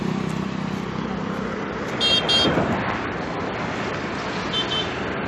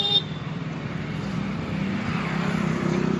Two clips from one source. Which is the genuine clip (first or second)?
first